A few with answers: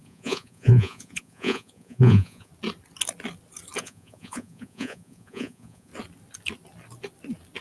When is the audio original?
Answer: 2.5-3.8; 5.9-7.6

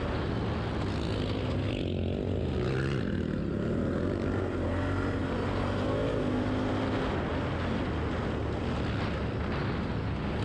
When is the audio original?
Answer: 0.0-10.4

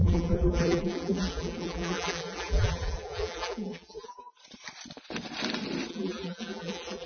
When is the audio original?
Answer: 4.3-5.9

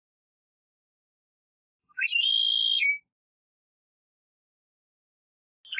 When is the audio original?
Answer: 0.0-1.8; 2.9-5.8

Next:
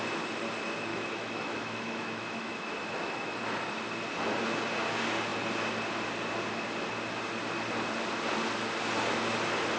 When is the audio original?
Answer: 0.0-0.9; 3.4-9.8

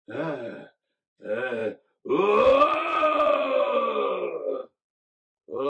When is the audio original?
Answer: 0.0-2.5; 3.5-4.6